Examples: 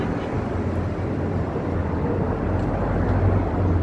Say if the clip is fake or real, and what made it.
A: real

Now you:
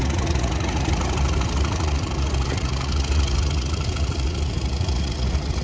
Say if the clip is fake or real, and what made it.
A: fake, vocoder, Vocos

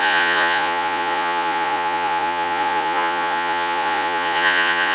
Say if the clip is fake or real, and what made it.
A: fake, vocoder, Vocos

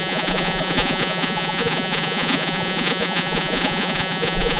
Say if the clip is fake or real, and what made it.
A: fake, vocoder, Vocos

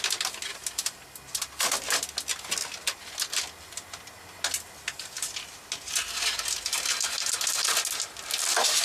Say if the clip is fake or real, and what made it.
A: real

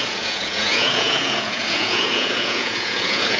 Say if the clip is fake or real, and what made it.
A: fake, vocoder, Vocos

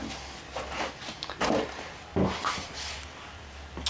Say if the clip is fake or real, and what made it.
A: real